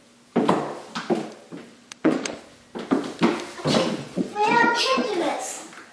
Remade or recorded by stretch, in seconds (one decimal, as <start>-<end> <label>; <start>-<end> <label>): 0.0-1.6 recorded; 1.6-2.4 remade; 2.4-4.0 recorded; 4.0-5.1 remade; 5.1-5.9 recorded

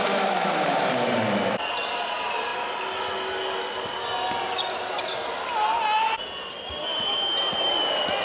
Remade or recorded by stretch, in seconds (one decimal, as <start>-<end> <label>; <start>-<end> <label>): 0.0-8.2 recorded

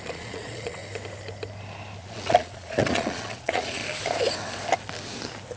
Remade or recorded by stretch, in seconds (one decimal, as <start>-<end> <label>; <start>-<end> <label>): 0.0-0.8 remade; 0.8-2.0 recorded; 2.0-3.8 remade; 3.8-5.6 recorded

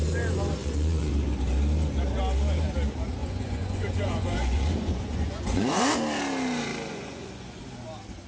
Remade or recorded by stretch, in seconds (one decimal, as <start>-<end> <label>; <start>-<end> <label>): 0.0-0.6 recorded; 0.6-1.1 remade; 1.1-3.2 recorded; 3.2-5.8 remade; 5.8-6.9 recorded; 6.9-7.6 remade; 7.6-8.3 recorded

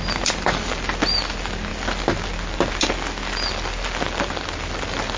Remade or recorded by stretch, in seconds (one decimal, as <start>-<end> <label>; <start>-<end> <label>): 0.0-5.2 recorded